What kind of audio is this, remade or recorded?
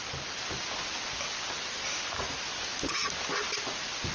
recorded